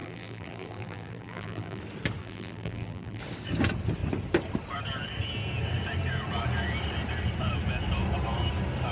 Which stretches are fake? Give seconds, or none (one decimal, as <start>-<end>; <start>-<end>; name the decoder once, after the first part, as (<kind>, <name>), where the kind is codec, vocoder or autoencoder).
0.0-1.8 (vocoder, BigVGAN v2); 2.2-3.2